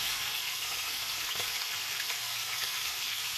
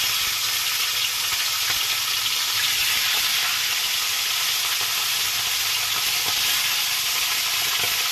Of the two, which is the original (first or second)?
second